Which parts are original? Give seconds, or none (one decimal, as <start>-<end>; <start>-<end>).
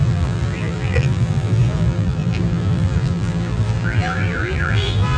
none